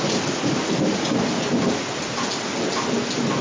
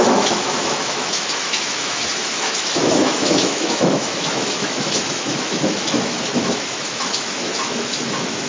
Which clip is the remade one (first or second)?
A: second